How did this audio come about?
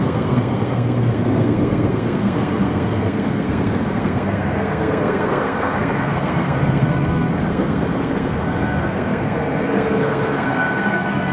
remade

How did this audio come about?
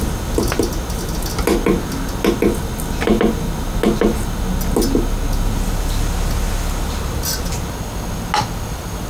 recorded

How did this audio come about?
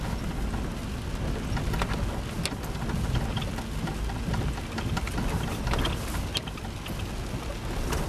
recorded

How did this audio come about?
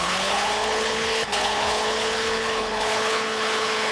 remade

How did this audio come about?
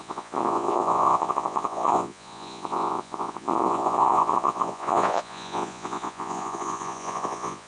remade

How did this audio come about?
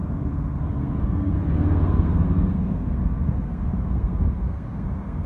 remade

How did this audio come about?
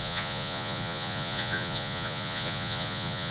remade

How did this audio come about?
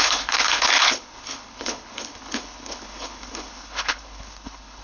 remade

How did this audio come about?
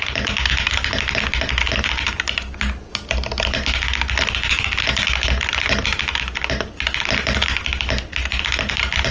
recorded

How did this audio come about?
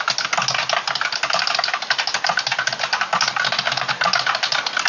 recorded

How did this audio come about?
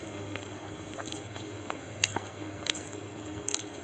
remade